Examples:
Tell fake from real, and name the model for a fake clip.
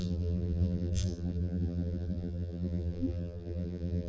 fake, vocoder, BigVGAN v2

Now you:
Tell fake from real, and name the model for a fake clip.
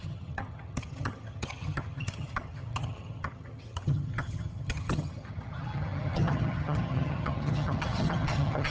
fake, vocoder, HiFi-GAN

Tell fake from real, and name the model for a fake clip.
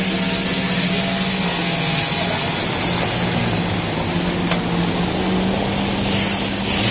real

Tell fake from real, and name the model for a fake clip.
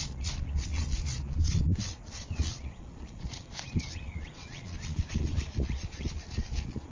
fake, vocoder, Vocos